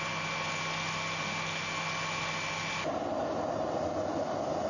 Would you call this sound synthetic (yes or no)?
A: no